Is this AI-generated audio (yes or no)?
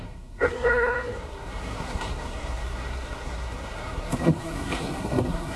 yes